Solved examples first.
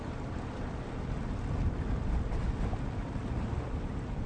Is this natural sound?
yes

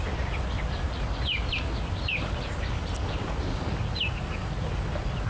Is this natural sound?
yes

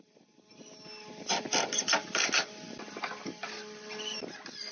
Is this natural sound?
yes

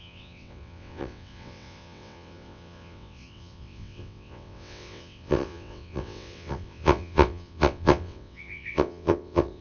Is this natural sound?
no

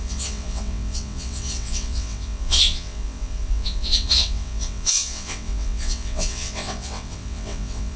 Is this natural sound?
no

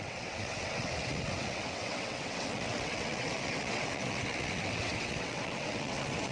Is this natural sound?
no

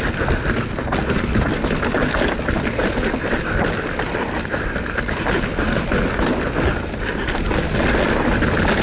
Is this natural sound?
yes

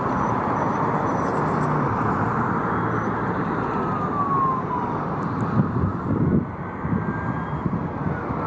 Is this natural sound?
yes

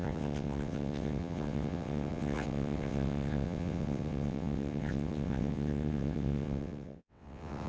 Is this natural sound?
no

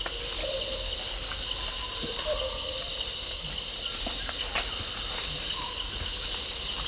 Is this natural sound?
yes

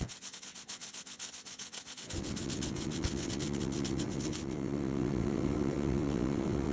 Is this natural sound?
no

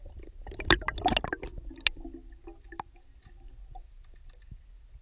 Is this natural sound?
yes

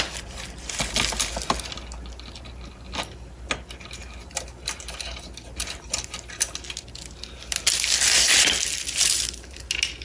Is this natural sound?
yes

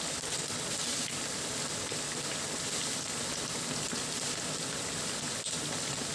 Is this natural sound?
yes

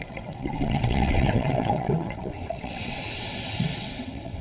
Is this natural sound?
no